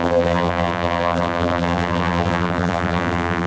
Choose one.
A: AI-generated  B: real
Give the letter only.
A